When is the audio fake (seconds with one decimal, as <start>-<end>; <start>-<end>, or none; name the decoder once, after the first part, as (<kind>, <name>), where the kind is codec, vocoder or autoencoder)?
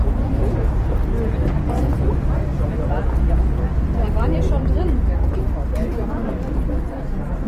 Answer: none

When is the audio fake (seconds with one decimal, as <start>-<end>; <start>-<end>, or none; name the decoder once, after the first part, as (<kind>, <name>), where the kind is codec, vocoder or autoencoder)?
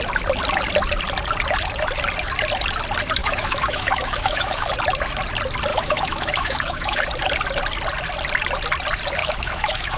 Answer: 3.2-4.7 (autoencoder, DAC-VAE); 5.7-7.0; 9.2-10.0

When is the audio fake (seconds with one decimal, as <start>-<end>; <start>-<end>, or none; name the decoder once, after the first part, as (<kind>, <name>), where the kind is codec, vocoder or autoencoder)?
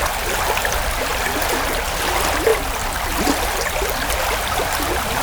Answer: none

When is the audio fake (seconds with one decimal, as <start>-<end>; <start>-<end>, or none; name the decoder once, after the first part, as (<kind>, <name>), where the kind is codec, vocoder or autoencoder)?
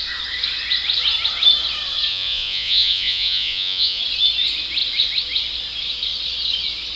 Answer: 2.1-4.0 (vocoder, Vocos)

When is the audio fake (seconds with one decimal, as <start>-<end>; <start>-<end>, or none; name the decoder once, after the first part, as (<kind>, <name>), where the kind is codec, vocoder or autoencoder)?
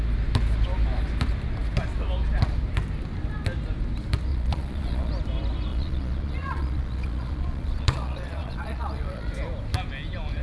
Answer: 4.3-5.1 (vocoder, Vocos); 5.7-9.3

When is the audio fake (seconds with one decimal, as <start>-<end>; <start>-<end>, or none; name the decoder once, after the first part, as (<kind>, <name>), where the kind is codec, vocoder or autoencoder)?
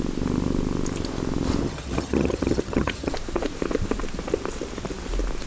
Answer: 1.6-3.1 (vocoder, HiFi-GAN)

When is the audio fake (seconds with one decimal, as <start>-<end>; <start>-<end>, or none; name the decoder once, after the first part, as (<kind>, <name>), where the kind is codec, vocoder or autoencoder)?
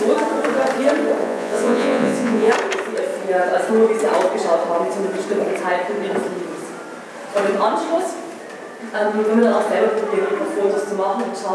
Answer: 1.2-2.5 (vocoder, Vocos)